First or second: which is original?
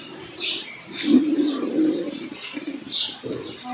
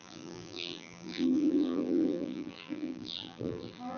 first